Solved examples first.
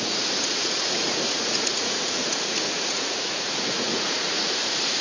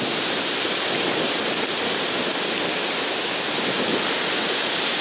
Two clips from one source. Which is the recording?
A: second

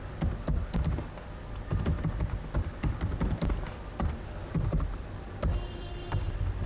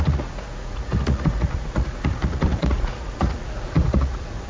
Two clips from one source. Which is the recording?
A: first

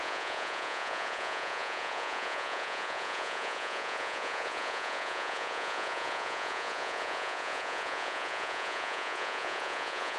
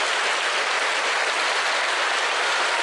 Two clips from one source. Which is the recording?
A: second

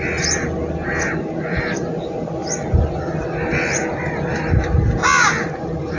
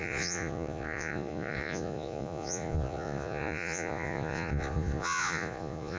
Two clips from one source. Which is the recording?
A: first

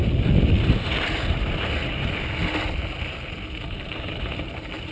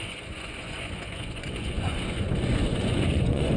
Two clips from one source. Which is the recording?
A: first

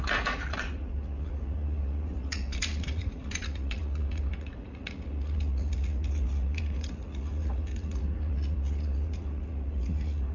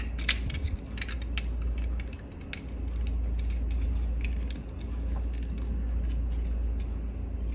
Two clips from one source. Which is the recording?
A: second